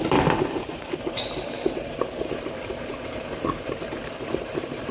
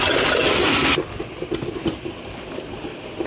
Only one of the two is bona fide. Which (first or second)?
second